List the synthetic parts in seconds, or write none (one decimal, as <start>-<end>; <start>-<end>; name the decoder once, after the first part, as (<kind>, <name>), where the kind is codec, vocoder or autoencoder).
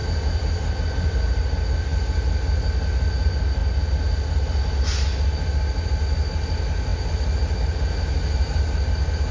none